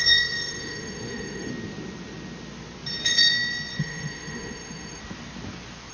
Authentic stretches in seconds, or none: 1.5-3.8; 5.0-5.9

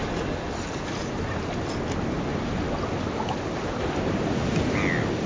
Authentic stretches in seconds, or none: 0.0-5.3

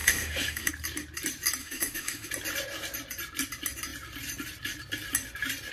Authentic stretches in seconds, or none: 0.7-1.6; 2.3-5.7

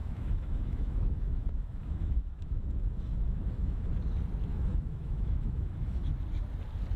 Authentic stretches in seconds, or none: 3.9-4.5; 6.0-7.0

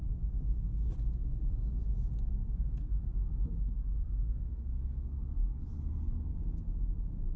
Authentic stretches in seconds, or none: 0.0-1.2; 5.6-7.4

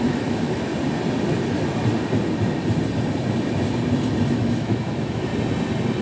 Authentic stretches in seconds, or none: 0.7-4.3; 5.3-6.0

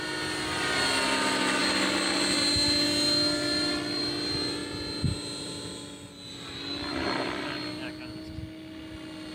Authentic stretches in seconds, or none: 0.0-9.3

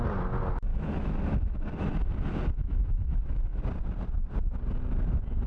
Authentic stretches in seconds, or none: 0.0-0.7; 1.2-2.6; 3.6-5.5